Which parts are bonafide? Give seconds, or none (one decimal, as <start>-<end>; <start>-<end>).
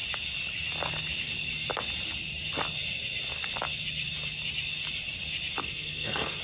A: 0.0-5.6